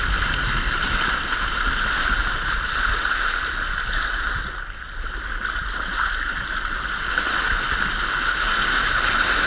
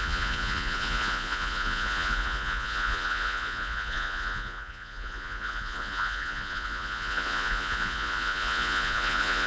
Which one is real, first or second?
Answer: first